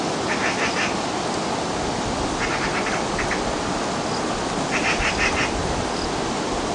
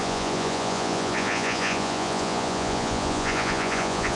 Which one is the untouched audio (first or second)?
first